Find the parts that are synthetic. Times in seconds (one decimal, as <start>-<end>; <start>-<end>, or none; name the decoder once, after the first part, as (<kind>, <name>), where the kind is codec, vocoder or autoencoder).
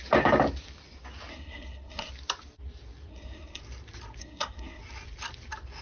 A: 1.3-2.1 (codec, SNAC); 3.1-3.6; 4.2-4.8